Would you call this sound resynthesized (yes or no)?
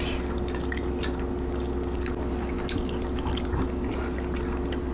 no